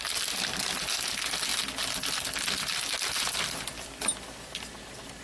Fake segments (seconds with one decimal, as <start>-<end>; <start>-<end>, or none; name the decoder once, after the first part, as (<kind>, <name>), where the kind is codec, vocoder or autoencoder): none